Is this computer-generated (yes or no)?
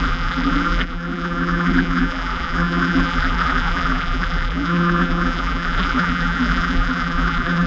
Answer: yes